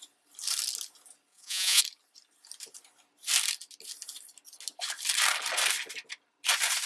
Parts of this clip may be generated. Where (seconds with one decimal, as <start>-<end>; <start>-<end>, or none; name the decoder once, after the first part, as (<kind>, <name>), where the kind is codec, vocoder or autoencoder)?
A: 1.3-1.8 (vocoder, Vocos)